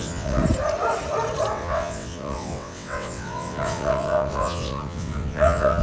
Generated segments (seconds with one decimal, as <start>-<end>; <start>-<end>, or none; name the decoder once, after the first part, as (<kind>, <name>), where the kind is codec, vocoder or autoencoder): 0.0-0.4 (vocoder, WaveNeXt); 1.5-5.8